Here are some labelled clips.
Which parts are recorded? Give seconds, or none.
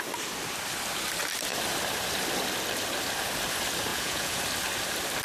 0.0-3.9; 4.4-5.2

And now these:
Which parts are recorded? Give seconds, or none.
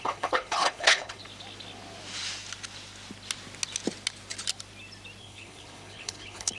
1.2-5.2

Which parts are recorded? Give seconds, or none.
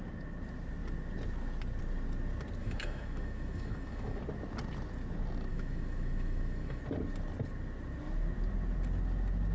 0.0-2.6; 4.2-5.5; 6.8-9.5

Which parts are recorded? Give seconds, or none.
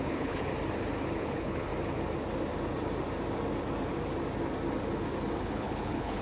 0.5-1.2; 1.7-5.4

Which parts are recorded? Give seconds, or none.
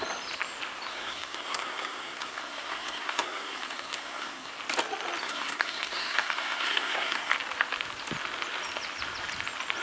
0.0-0.9; 4.5-5.2; 7.3-9.8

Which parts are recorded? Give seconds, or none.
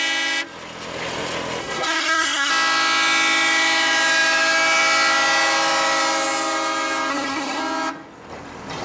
0.0-1.6; 2.5-7.1; 7.6-8.8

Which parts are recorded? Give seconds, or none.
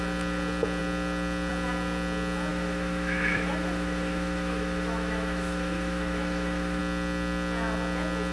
0.0-2.5; 6.8-8.3